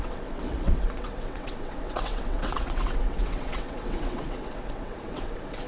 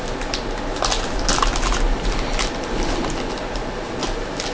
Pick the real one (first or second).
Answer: second